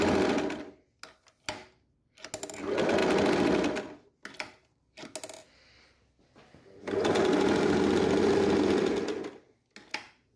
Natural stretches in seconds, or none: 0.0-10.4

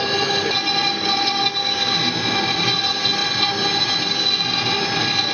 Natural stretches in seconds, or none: 0.0-5.3

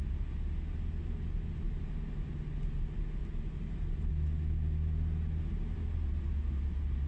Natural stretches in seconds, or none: 0.0-3.2; 4.1-7.1

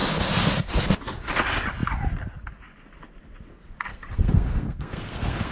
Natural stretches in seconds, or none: 0.0-3.9